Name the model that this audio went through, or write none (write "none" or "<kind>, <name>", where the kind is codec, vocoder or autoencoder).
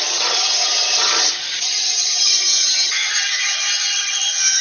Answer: vocoder, HiFi-GAN